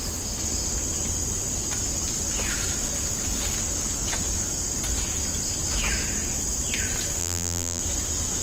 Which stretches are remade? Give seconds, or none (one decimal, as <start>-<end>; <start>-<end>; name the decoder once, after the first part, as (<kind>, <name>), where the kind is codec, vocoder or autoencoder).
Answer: 7.2-7.8 (vocoder, BigVGAN v2)